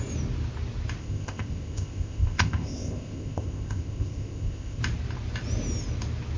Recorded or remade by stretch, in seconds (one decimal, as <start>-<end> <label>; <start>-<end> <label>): 0.0-1.0 recorded; 1.0-4.8 remade; 4.8-6.4 recorded